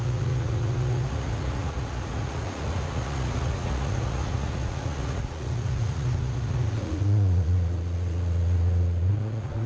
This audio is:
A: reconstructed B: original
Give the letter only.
A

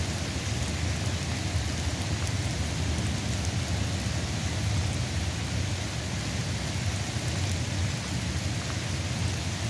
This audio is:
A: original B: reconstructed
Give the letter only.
A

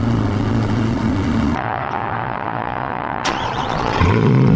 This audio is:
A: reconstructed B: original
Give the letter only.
A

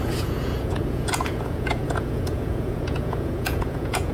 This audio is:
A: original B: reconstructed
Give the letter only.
B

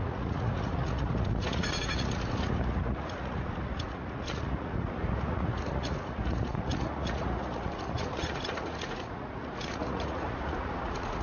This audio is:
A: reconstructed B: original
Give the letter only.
A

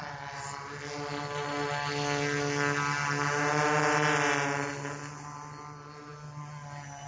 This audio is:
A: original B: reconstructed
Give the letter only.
A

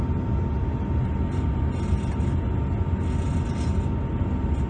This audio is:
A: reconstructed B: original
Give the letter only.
B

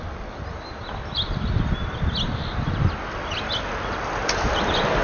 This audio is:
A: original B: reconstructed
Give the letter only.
A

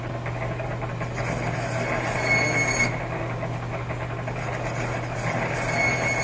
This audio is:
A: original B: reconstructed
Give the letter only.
A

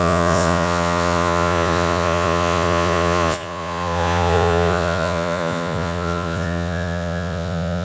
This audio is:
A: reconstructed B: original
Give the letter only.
A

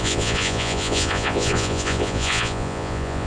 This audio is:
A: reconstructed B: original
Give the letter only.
A